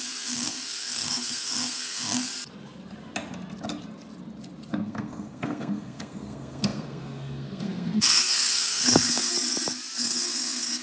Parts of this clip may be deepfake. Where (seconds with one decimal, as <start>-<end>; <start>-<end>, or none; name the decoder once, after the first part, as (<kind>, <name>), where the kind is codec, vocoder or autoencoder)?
0.0-2.3 (codec, SNAC); 4.7-9.3; 10.0-10.8